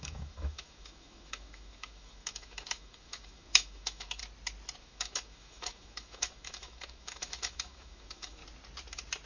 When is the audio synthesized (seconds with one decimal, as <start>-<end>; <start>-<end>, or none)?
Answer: 0.0-4.2; 4.8-8.4